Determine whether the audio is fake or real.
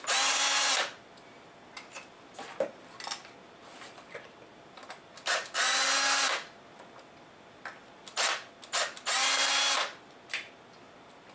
real